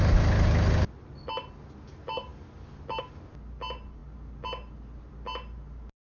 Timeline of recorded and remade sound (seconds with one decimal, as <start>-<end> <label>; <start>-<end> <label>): 0.0-6.0 recorded